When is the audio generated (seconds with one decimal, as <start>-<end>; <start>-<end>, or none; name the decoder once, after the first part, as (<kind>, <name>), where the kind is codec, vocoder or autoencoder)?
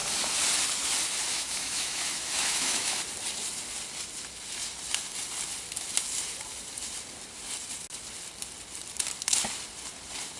1.3-3.0 (autoencoder, DAC-VAE)